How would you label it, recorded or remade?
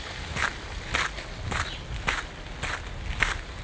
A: recorded